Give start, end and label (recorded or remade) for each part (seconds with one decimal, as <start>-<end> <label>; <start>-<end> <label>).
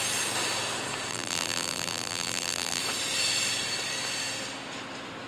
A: 0.0-1.1 recorded; 1.1-2.8 remade; 2.8-5.3 recorded